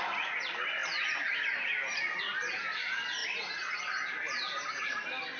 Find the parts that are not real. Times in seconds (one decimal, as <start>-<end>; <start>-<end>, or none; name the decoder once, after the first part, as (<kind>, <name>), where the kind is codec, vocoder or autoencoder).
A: none